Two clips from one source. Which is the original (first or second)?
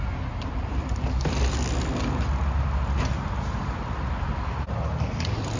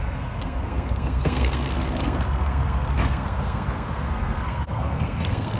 first